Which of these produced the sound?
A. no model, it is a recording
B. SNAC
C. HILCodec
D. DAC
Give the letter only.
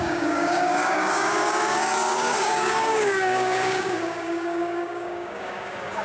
D